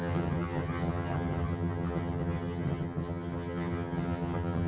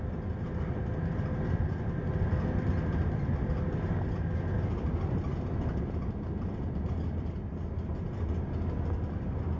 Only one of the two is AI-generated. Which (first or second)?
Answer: first